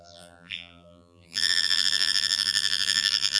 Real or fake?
fake